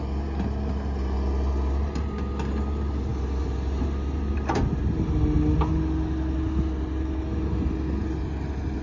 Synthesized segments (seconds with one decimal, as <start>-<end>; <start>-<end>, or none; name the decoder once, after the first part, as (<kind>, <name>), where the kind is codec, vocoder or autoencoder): none